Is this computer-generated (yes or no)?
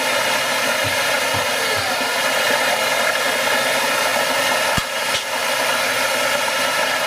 no